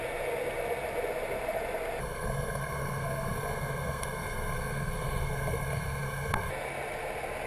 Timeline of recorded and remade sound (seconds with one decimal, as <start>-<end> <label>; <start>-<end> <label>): 0.0-2.0 recorded; 2.0-6.5 remade; 6.5-7.5 recorded